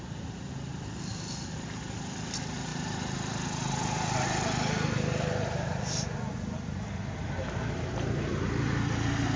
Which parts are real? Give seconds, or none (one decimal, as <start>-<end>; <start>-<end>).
0.0-9.4